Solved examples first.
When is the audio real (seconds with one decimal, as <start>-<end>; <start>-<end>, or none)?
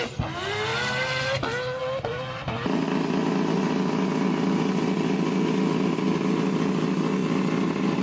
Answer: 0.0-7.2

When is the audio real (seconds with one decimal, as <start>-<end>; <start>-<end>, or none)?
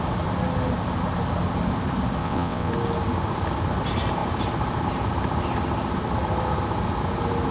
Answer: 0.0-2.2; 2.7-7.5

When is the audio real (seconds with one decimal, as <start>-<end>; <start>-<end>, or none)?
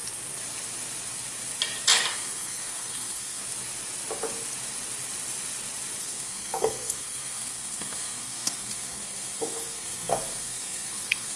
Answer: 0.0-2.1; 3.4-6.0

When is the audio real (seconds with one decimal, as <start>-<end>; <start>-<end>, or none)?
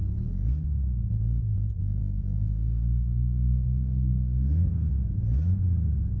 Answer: 0.0-2.0; 4.9-6.2